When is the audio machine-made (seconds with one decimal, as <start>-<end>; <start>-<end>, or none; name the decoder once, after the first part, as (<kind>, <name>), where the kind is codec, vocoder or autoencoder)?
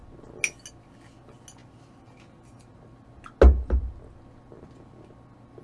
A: none